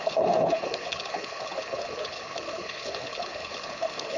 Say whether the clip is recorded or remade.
remade